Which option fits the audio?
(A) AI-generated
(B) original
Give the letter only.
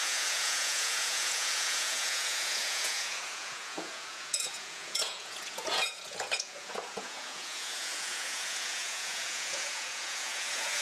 A